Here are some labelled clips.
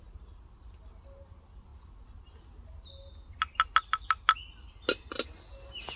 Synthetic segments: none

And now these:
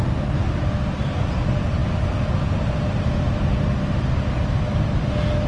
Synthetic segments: none